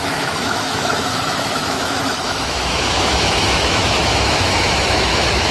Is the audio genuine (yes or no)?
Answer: no